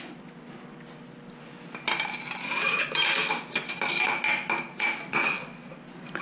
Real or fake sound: real